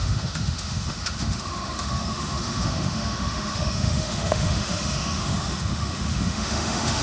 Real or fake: fake